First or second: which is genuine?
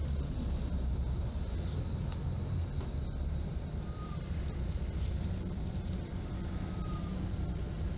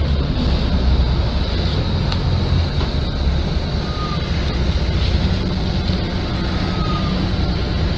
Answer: second